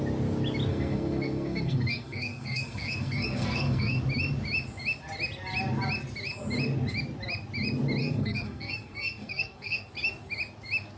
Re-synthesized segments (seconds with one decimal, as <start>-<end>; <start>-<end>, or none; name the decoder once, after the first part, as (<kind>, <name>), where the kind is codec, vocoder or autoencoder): 0.7-4.0 (codec, SNAC); 8.0-9.9